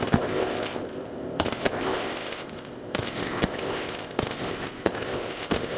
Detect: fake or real fake